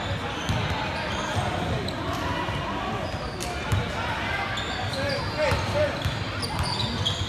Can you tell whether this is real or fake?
real